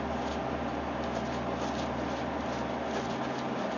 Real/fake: real